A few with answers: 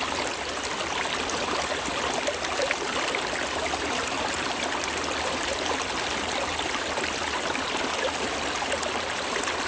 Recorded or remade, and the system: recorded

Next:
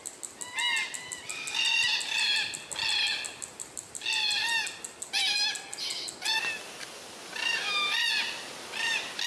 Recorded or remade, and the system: recorded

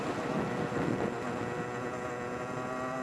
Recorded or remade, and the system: recorded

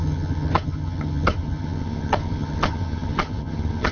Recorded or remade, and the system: remade, vocoder, HiFi-GAN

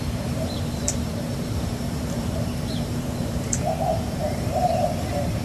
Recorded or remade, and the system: remade, vocoder, BigVGAN v2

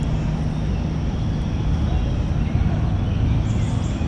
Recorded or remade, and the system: recorded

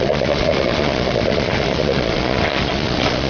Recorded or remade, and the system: remade, vocoder, Vocos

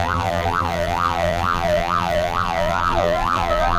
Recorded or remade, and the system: remade, vocoder, BigVGAN v2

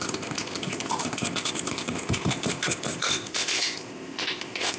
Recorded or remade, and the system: remade, codec, ZipCodec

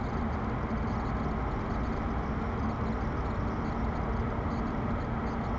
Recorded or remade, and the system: recorded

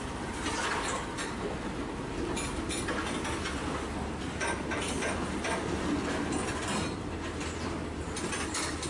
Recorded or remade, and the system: recorded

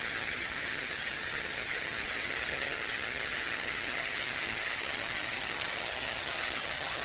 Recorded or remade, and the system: remade, vocoder, HiFi-GAN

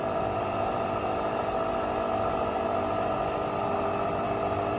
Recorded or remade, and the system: recorded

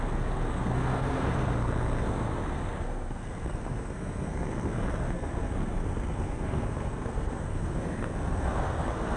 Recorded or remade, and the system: remade, codec, SNAC